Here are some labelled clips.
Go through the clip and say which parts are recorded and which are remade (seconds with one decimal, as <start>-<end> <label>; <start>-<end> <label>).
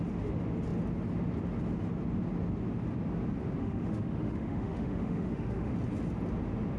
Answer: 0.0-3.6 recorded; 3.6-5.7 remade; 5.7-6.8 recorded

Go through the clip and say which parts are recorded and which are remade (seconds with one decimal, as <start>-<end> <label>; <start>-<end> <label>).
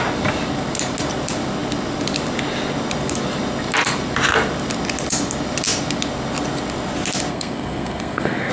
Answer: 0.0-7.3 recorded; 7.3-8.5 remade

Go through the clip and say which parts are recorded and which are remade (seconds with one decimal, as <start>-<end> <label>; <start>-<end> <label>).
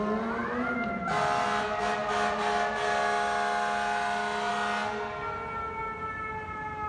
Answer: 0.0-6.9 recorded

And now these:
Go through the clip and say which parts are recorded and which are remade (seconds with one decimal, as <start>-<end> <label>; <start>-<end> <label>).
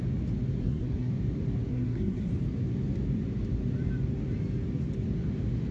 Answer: 0.0-0.6 recorded; 0.6-1.1 remade; 1.1-1.7 recorded; 1.7-2.3 remade; 2.3-5.7 recorded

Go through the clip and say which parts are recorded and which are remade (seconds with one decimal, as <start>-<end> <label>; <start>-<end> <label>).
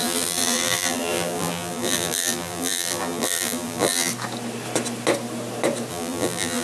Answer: 0.0-4.1 remade; 4.1-5.9 recorded; 5.9-6.6 remade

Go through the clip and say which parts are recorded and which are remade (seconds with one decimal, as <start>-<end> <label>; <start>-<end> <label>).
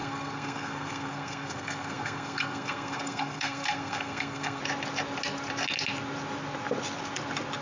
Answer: 0.0-4.6 remade; 4.6-7.6 recorded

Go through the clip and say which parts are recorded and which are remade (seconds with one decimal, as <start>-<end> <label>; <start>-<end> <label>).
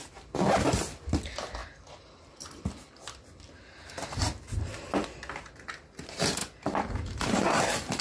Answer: 0.0-1.6 recorded; 1.6-5.2 remade; 5.2-6.4 recorded; 6.4-7.6 remade; 7.6-8.0 recorded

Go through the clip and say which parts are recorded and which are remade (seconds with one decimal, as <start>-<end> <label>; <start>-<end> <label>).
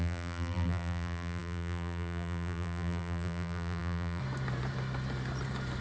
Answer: 0.0-4.2 remade; 4.2-5.8 recorded